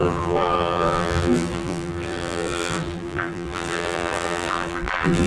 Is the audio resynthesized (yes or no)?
yes